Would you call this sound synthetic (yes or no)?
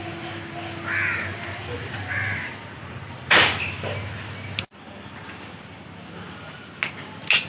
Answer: no